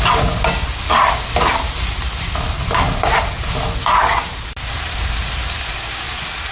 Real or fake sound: real